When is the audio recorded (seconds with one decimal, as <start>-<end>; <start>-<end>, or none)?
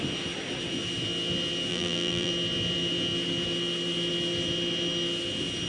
0.0-1.7; 2.3-5.7